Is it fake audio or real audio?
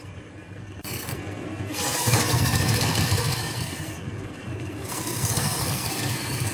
fake